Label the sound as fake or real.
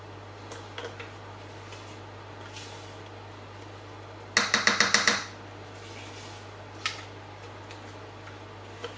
real